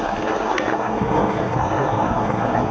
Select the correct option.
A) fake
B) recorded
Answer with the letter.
A